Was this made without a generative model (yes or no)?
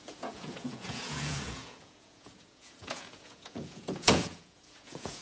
no